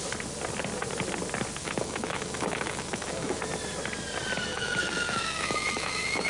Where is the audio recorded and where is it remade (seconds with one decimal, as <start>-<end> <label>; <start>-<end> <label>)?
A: 0.0-1.6 recorded; 1.6-3.4 remade; 3.4-4.5 recorded; 4.5-6.3 remade